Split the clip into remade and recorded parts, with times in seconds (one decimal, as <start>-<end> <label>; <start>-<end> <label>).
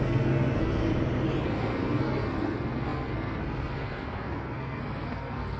0.0-0.8 remade; 0.8-1.4 recorded; 1.4-5.6 remade